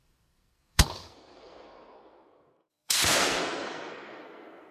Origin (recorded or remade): remade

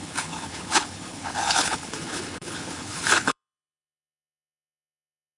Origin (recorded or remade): remade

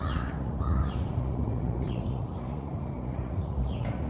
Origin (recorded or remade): remade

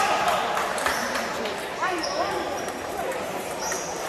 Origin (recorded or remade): remade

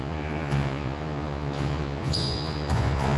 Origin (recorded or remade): remade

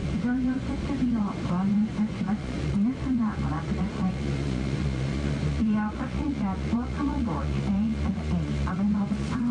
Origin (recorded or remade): remade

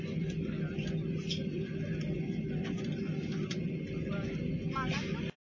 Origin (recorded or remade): recorded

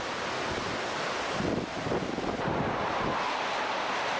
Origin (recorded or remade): recorded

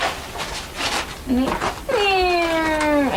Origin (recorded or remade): recorded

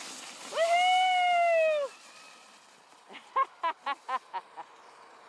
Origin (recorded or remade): recorded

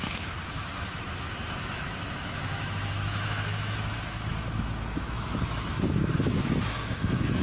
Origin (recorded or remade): remade